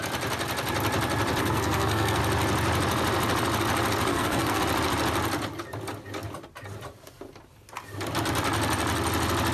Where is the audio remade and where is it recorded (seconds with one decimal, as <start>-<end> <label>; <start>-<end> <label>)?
0.0-1.4 recorded; 1.4-2.2 remade; 2.2-4.1 recorded; 4.1-4.6 remade; 4.6-9.5 recorded